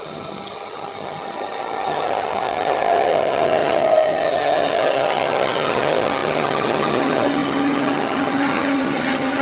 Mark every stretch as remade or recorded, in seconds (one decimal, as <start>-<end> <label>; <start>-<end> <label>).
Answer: 0.0-9.4 remade

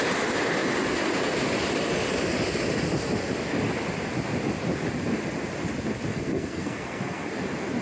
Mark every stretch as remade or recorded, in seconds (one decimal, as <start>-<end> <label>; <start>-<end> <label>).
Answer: 0.0-6.1 recorded; 6.1-7.3 remade; 7.3-7.8 recorded

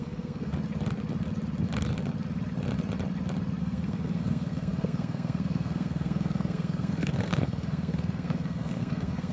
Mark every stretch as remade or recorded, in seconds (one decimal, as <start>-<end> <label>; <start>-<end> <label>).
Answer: 0.0-0.5 remade; 0.5-3.6 recorded; 3.6-9.3 remade

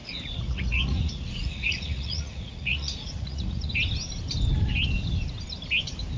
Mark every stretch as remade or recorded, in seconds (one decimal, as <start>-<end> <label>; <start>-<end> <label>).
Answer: 0.0-3.7 remade; 3.7-6.2 recorded

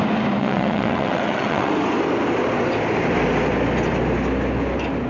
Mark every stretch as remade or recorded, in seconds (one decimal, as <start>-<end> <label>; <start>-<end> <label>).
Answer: 0.0-0.4 recorded; 0.4-1.7 remade; 1.7-5.1 recorded

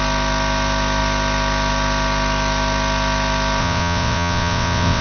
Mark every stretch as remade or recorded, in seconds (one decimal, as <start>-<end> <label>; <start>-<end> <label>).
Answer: 0.0-3.6 recorded; 3.6-5.0 remade

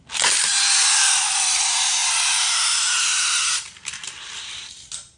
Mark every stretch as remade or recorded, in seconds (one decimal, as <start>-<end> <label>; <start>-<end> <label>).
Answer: 0.0-5.2 recorded